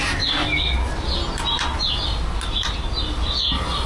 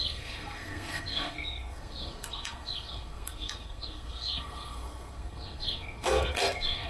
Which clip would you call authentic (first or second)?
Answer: first